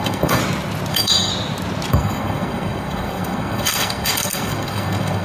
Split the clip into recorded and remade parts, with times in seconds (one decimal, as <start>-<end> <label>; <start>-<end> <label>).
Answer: 0.0-0.4 remade; 0.4-0.9 recorded; 0.9-1.3 remade; 1.3-1.9 recorded; 1.9-5.2 remade